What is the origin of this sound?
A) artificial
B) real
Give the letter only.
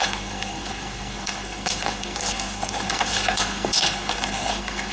A